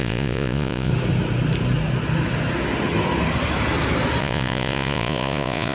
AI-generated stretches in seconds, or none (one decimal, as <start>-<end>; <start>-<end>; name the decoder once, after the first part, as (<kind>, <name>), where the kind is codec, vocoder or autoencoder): 0.0-0.9 (vocoder, Vocos); 4.2-5.7